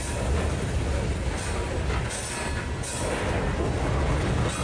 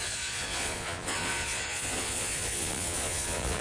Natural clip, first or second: first